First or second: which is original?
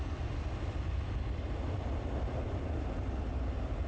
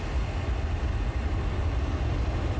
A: second